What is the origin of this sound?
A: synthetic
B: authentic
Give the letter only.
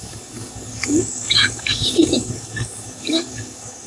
A